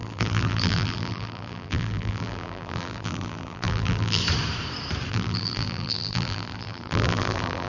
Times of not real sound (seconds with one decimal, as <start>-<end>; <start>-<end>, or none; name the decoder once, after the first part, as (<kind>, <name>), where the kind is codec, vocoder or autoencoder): 0.0-4.2 (vocoder, BigVGAN v2); 5.1-7.7